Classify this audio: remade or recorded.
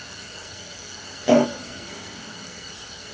remade